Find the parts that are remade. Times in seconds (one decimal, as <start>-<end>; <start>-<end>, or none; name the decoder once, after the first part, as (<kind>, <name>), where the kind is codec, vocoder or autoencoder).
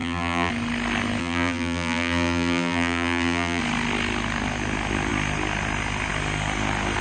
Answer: 0.0-0.5 (vocoder, BigVGAN v2); 1.2-3.6